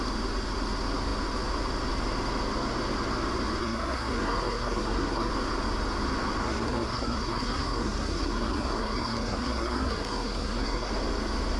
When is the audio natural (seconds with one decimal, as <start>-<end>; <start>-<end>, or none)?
0.0-3.6; 5.3-6.4; 10.9-11.6